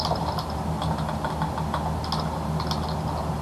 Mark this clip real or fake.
real